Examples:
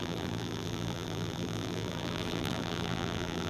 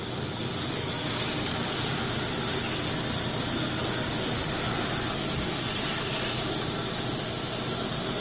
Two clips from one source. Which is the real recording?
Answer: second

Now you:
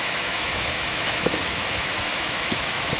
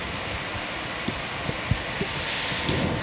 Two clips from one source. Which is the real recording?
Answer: second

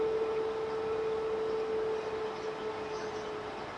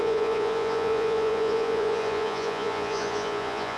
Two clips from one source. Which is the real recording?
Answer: first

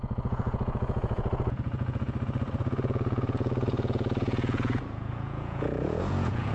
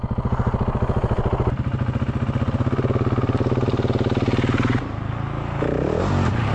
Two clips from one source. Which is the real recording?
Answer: second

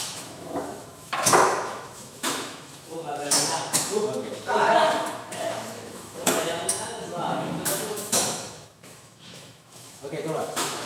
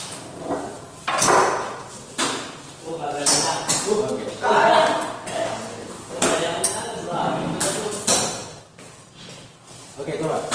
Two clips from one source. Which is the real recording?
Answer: second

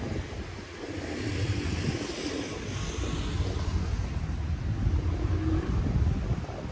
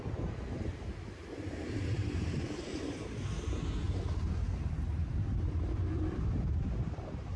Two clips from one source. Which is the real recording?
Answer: first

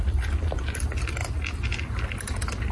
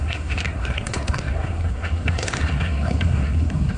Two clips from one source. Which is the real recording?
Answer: first